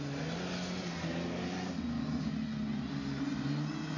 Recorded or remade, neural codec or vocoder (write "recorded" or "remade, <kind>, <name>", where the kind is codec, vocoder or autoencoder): recorded